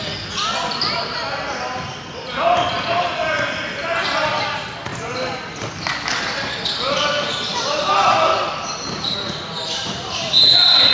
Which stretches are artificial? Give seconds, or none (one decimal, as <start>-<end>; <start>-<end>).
4.9-5.8; 7.5-10.1